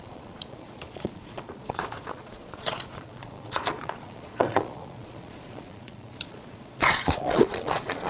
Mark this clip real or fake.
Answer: fake